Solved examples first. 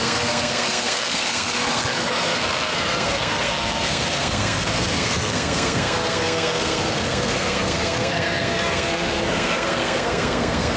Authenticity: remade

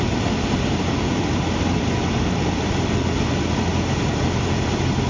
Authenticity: remade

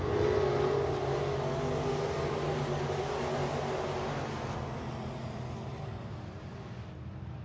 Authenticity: recorded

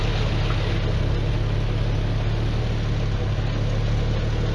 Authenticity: recorded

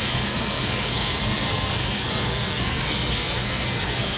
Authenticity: remade